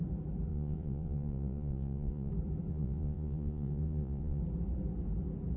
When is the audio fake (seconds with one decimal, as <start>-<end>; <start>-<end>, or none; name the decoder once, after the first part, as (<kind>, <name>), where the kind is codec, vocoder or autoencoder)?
0.5-2.3 (vocoder, Vocos); 2.7-4.4